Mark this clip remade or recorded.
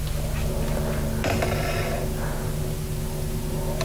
recorded